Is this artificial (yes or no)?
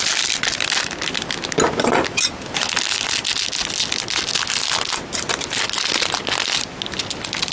no